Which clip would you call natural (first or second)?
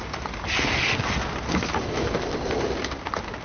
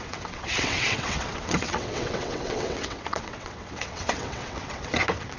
first